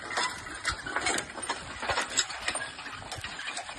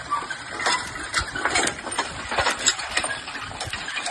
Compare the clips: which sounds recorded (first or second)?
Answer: first